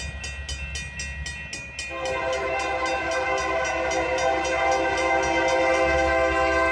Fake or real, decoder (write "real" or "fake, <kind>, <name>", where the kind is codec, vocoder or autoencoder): real